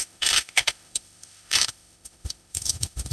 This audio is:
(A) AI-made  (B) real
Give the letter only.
A